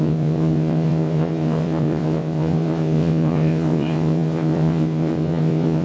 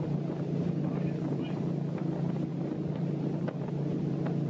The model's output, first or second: first